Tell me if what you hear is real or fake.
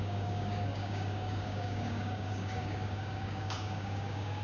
fake